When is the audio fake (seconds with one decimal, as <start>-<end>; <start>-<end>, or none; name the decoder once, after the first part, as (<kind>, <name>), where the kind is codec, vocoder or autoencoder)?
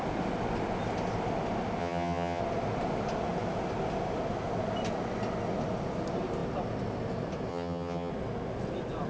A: 1.8-2.4 (vocoder, HiFi-GAN); 7.5-8.1